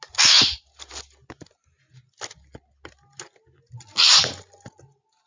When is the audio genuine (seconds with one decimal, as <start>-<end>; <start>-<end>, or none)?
0.0-5.3